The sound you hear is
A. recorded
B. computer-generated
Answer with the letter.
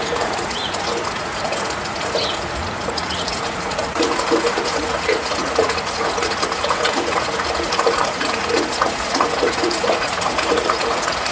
B